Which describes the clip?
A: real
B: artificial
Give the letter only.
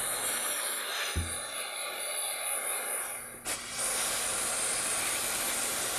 A